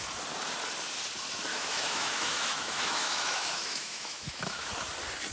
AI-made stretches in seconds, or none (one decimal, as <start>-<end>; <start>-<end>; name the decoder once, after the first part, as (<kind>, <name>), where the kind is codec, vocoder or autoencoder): 1.5-4.7 (autoencoder, DAC-VAE)